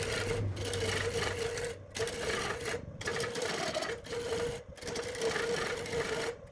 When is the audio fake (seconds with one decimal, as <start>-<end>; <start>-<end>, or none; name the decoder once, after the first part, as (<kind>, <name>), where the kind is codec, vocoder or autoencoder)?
none